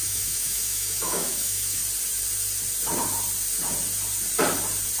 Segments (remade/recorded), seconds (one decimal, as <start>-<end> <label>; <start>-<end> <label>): 0.0-1.8 remade; 1.8-5.0 recorded